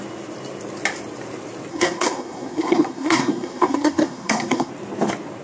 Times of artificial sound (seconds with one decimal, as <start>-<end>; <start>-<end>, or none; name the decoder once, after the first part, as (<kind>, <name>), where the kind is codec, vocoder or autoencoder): 1.7-4.7 (codec, SNAC)